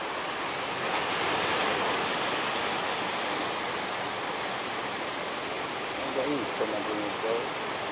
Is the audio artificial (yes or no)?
no